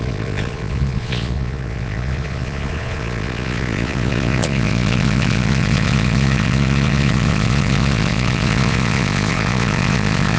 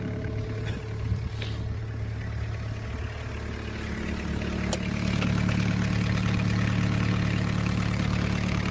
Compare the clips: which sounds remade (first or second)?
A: first